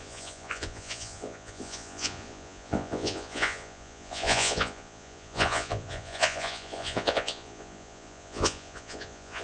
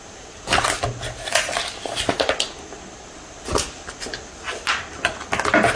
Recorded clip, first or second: second